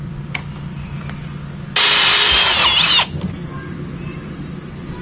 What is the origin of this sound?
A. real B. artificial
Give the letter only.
A